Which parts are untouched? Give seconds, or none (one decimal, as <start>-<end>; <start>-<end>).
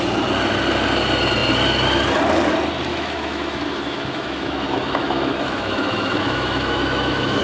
0.0-2.9